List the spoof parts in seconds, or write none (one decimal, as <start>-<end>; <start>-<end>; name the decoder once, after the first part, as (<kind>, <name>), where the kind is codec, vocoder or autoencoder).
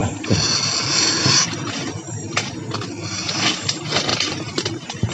4.1-5.1 (vocoder, BigVGAN v2)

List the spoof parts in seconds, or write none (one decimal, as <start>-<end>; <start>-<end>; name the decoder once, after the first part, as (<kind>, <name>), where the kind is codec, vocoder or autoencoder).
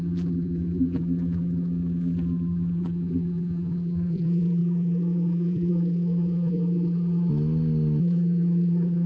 0.0-7.3 (vocoder, BigVGAN v2); 8.0-9.1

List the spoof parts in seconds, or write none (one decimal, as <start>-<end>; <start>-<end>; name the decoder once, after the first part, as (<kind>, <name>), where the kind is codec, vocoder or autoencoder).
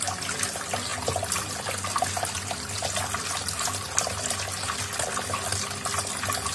none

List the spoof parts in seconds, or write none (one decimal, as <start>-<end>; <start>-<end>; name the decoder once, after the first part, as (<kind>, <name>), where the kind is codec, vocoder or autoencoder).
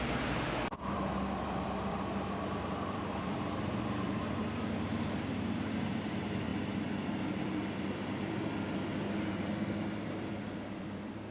0.0-11.3 (vocoder, BigVGAN v2)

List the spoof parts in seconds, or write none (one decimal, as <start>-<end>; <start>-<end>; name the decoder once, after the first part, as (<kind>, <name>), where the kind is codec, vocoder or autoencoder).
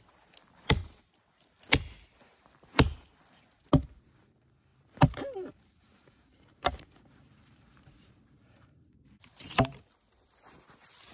0.8-1.5 (vocoder, BigVGAN v2); 4.7-9.8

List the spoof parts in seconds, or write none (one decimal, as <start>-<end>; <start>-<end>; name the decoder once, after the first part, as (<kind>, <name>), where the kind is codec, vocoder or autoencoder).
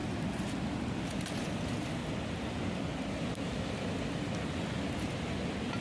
0.8-2.0 (vocoder, BigVGAN v2)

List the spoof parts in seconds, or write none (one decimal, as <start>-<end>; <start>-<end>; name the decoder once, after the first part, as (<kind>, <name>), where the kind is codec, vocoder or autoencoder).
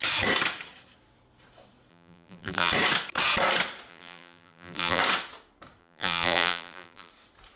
1.9-2.7 (vocoder, BigVGAN v2); 3.9-5.0; 5.8-7.1